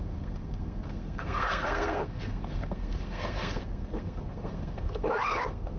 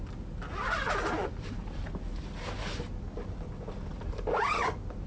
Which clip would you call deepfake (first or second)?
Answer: first